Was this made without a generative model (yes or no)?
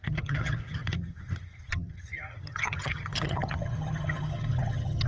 no